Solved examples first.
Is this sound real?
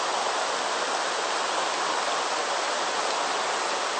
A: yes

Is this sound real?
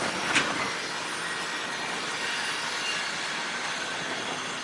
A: yes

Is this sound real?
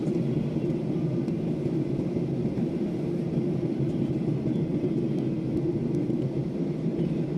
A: yes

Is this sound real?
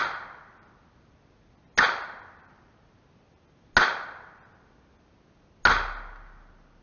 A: yes